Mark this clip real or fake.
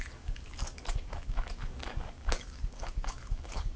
fake